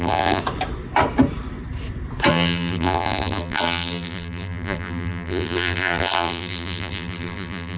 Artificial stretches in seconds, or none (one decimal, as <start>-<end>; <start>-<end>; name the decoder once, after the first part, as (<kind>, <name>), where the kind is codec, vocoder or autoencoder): 0.0-0.4 (vocoder, BigVGAN v2); 2.3-7.8